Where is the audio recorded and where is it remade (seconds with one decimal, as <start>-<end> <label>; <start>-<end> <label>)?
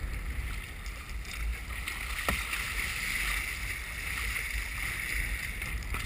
0.0-6.1 recorded